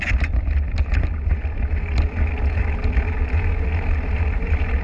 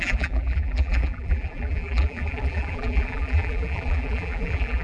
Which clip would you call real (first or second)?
first